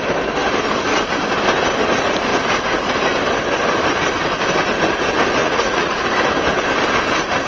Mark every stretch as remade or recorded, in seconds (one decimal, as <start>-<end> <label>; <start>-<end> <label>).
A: 0.0-5.4 recorded; 5.4-6.0 remade; 6.0-7.5 recorded